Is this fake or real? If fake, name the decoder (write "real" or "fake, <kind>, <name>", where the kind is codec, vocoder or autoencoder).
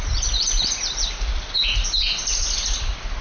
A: real